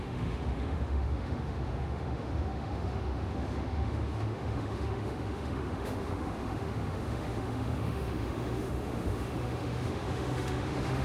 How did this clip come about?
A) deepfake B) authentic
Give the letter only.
A